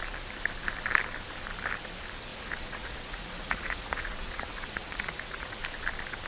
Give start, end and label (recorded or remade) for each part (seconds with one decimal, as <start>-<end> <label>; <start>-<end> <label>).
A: 0.0-2.3 recorded; 2.3-5.6 remade; 5.6-6.3 recorded